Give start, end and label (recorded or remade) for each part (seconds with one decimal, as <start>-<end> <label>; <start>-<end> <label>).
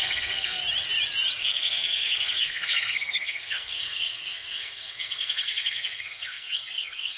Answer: 0.0-0.6 remade; 0.6-1.4 recorded; 1.4-7.2 remade